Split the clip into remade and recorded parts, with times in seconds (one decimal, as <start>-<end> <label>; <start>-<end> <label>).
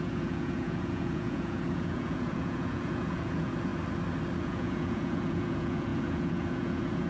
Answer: 0.0-3.7 remade; 3.7-4.4 recorded; 4.4-7.1 remade